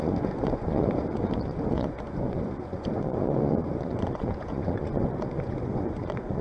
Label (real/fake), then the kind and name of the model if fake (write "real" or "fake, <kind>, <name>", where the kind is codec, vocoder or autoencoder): fake, vocoder, Vocos